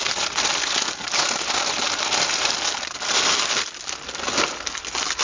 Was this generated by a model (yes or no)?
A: no